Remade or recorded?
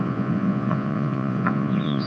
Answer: remade